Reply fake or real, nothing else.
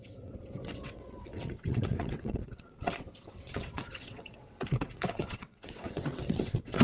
fake